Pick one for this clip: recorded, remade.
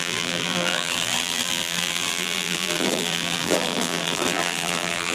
remade